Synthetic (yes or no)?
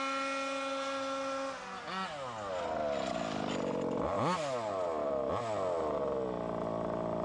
no